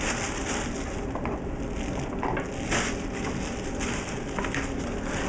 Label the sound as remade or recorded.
recorded